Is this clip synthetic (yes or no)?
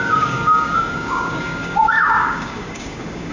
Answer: yes